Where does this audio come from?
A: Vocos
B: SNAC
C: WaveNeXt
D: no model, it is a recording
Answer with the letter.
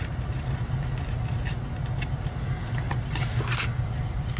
D